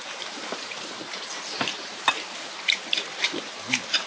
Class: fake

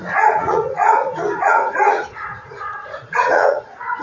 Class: fake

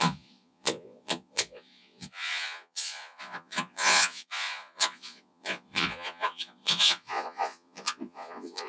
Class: fake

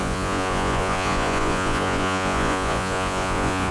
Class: fake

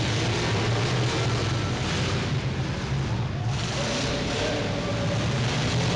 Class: real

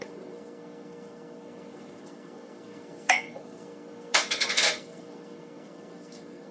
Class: fake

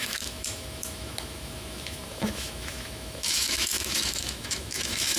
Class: fake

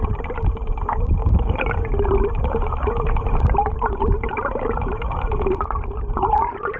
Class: fake